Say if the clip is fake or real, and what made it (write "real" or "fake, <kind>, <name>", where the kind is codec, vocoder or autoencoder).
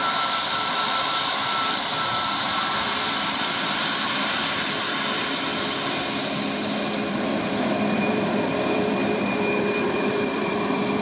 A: fake, vocoder, BigVGAN v2